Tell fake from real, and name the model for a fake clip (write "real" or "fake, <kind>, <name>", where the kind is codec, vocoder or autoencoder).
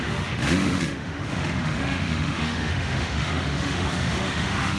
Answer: fake, autoencoder, DAC-VAE